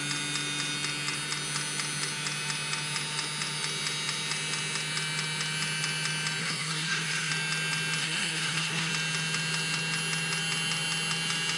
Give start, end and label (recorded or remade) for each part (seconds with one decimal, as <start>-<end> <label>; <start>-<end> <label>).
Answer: 0.0-6.4 recorded; 6.4-7.3 remade; 7.3-8.0 recorded; 8.0-8.9 remade; 8.9-11.6 recorded